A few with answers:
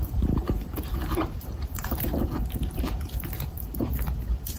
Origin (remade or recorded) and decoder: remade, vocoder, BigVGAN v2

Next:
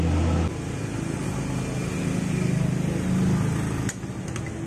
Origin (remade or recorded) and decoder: recorded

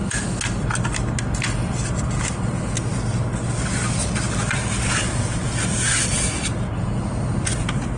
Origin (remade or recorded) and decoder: recorded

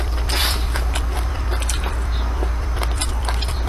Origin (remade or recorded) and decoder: remade, vocoder, BigVGAN v2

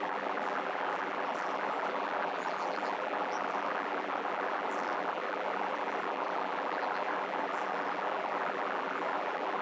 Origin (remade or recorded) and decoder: remade, vocoder, BigVGAN v2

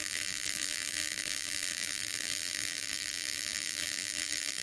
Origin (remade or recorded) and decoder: remade, vocoder, BigVGAN v2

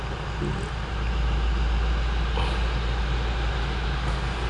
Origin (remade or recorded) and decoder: recorded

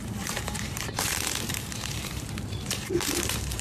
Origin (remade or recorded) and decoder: remade, vocoder, BigVGAN v2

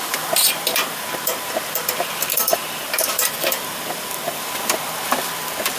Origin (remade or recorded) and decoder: remade, vocoder, BigVGAN v2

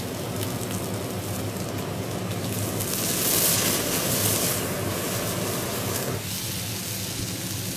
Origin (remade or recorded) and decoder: recorded